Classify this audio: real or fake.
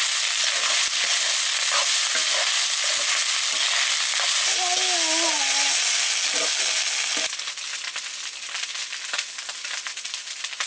real